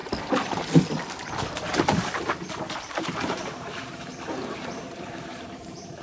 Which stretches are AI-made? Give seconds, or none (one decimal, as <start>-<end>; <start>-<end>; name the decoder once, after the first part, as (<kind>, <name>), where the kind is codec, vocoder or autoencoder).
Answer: 2.9-6.0 (vocoder, BigVGAN v2)